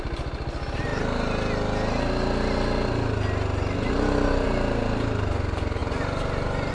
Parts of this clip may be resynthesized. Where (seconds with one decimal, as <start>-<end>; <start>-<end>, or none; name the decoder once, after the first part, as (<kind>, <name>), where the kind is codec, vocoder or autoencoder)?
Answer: none